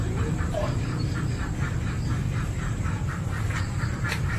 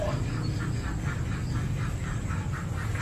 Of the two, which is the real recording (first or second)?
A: second